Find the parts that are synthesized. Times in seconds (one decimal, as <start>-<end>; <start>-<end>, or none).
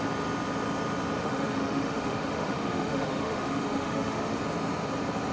1.2-4.4